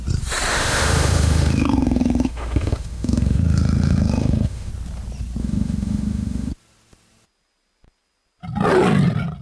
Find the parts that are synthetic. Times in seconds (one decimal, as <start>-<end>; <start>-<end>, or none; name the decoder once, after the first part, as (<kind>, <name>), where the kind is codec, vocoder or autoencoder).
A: 0.5-4.7 (autoencoder, DAC-VAE); 5.4-6.5